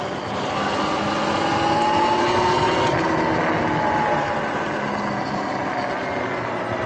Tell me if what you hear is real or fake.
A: real